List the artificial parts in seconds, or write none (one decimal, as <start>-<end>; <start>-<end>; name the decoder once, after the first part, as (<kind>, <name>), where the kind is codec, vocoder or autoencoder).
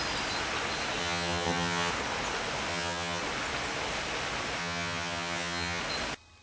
1.0-1.9 (vocoder, HiFi-GAN); 2.7-3.2; 4.6-5.8